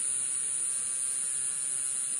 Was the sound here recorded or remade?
recorded